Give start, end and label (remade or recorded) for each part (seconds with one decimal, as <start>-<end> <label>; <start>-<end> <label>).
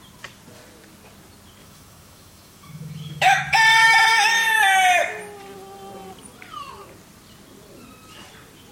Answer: 0.0-1.6 recorded; 1.6-3.4 remade; 3.4-3.8 recorded; 3.8-4.6 remade; 4.6-8.7 recorded